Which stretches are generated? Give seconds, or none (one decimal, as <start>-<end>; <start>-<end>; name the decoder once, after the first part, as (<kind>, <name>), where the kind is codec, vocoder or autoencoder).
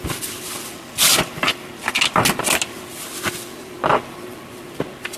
none